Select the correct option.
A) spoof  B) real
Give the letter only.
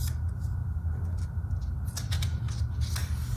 B